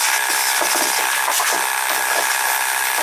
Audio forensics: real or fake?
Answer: real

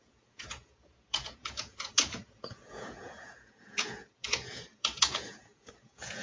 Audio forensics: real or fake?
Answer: fake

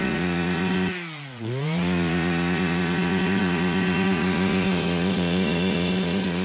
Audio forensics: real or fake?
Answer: fake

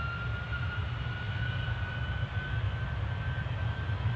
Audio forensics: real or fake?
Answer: real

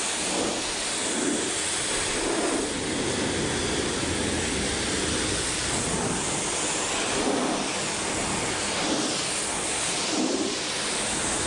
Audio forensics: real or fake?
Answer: real